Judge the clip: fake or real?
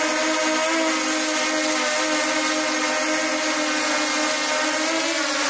real